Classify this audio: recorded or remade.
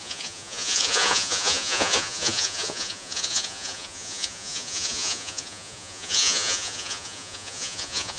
remade